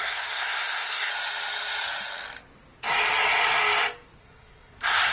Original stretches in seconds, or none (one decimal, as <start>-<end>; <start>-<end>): 1.1-4.2

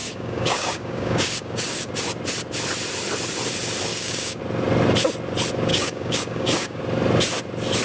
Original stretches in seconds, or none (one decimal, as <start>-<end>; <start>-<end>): 1.9-3.9; 4.4-5.7; 6.8-7.8

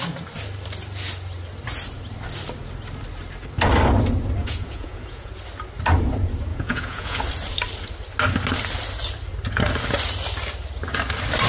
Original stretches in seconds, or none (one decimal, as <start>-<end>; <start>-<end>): 0.0-4.4; 5.3-6.5; 7.2-11.5